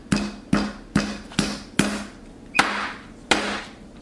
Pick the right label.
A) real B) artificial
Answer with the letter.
A